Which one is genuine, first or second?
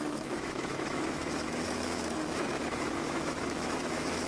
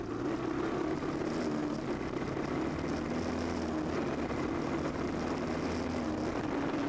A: second